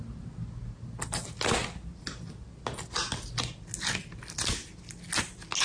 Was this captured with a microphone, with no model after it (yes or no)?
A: yes